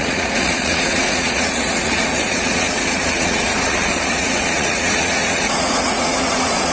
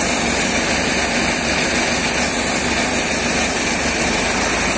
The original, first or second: second